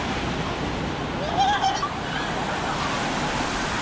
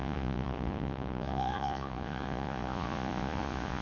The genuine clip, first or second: first